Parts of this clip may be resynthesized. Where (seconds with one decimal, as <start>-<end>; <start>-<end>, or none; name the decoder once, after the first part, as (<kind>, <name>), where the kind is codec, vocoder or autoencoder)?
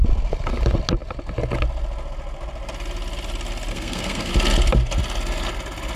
3.7-4.3 (codec, SNAC)